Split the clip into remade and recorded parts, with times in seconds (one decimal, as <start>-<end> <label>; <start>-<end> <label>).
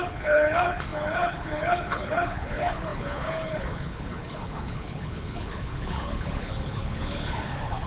0.0-7.9 remade